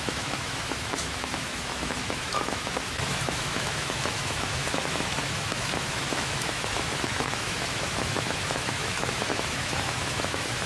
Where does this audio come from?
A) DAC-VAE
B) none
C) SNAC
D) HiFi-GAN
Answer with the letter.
A